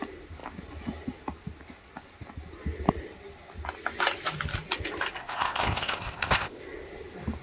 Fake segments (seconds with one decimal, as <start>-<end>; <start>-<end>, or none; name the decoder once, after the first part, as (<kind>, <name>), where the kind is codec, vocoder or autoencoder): 5.2-6.6 (codec, ZipCodec)

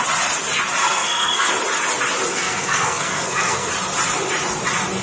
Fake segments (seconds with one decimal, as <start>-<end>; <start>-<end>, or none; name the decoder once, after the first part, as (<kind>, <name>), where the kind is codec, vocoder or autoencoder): 0.8-1.5 (codec, SNAC); 2.3-3.7

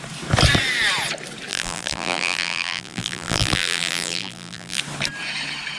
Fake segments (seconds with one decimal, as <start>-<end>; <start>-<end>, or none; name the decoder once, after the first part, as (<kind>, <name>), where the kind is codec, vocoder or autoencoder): 1.5-4.8 (vocoder, BigVGAN v2)

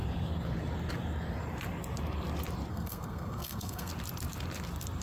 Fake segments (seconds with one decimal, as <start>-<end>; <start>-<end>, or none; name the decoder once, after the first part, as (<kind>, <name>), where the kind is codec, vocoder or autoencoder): 2.7-3.9 (codec, SNAC)